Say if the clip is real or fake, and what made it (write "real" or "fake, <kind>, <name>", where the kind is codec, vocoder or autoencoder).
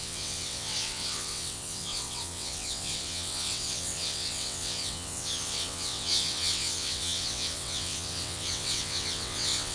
fake, vocoder, WaveNeXt